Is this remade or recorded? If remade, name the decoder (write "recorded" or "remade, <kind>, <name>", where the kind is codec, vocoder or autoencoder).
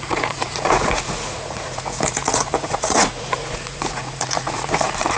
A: remade, vocoder, Vocos